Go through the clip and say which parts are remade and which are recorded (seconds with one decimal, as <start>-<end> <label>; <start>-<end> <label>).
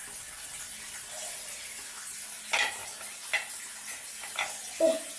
0.0-5.2 recorded